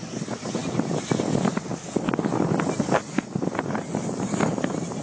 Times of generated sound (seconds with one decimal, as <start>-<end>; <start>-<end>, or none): none